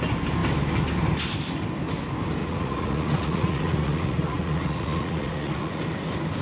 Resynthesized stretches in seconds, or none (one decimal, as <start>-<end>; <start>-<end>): 2.4-5.8